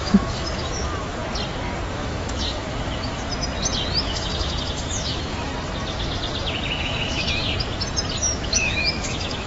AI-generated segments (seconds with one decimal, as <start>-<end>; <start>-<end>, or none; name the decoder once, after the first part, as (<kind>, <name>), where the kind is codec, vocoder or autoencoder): 0.0-1.2 (autoencoder, DAC-VAE); 1.9-3.3; 4.0-5.5; 6.8-7.4; 8.2-9.5